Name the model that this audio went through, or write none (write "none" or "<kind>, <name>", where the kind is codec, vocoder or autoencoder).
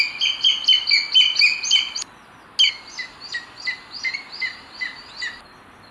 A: none